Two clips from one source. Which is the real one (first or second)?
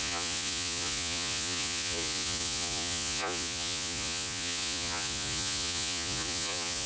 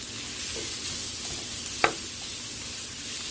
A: second